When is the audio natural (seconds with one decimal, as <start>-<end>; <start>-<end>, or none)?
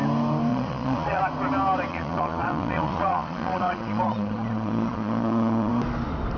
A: 0.0-0.5; 1.2-1.9; 5.7-6.4